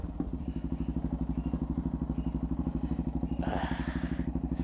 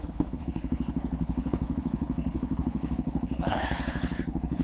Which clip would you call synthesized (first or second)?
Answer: second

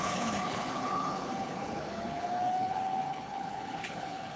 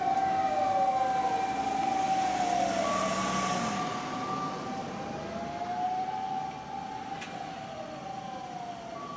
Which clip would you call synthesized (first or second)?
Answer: first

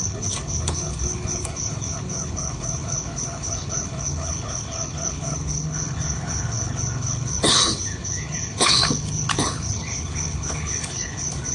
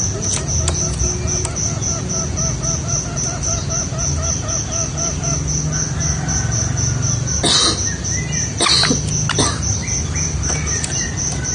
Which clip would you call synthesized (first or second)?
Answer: first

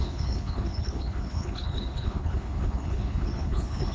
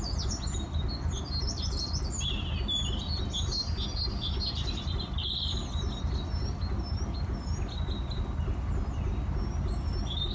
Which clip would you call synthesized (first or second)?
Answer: first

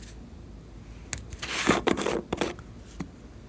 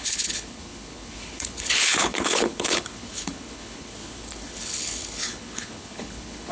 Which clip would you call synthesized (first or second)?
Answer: second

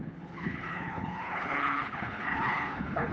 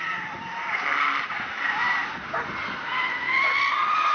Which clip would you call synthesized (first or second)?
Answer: first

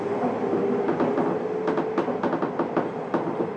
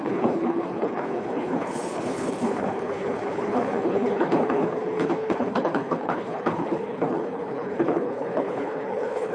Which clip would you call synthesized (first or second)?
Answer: second